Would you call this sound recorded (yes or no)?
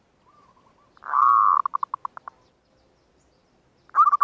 yes